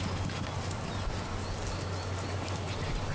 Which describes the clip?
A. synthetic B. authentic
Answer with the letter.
B